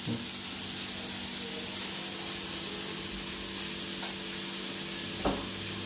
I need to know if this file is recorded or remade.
recorded